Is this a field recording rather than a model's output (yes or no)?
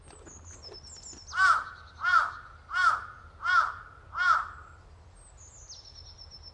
yes